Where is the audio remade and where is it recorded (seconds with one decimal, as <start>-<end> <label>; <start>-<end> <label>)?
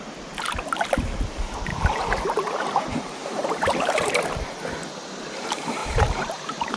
0.0-1.7 recorded; 1.7-2.8 remade; 2.8-3.2 recorded; 3.2-4.2 remade; 4.2-5.8 recorded; 5.8-6.8 remade